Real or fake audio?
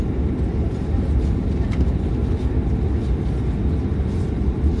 real